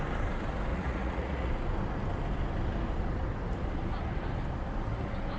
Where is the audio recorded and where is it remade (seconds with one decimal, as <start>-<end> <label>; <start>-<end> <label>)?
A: 0.0-0.7 recorded; 0.7-1.5 remade; 1.5-5.4 recorded